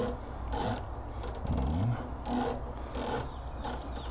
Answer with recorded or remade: recorded